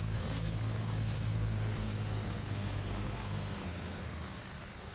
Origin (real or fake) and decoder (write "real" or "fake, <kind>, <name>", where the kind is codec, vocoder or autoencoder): fake, codec, SNAC